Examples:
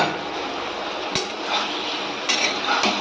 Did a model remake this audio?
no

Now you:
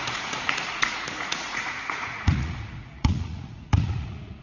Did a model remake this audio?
yes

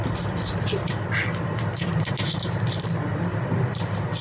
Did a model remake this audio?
no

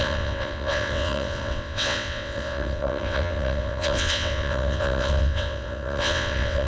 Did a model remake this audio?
yes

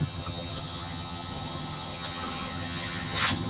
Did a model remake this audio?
yes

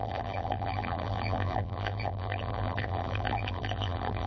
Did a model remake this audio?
yes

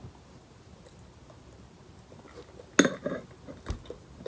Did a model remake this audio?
no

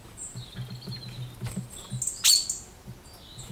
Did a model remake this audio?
no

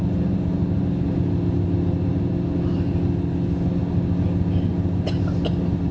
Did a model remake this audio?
no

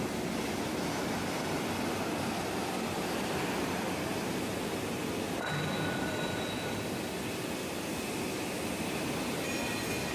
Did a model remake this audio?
no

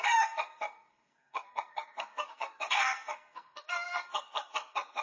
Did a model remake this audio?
yes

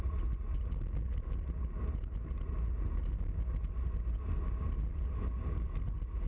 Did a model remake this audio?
no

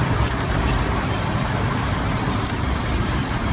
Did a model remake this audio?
yes